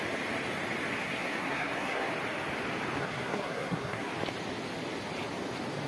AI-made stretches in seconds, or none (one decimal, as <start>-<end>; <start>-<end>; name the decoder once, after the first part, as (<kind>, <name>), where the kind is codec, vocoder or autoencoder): 1.0-2.1 (codec, SNAC); 3.0-4.1